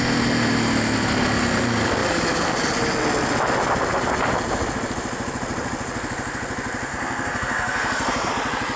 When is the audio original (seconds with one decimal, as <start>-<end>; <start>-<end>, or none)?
0.0-6.9; 8.3-8.8